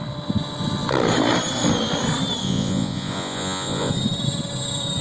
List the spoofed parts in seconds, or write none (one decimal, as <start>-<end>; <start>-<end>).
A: 2.4-3.9